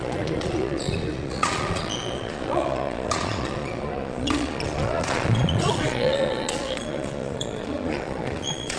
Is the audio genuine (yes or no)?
no